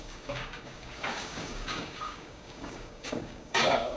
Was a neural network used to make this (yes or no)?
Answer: yes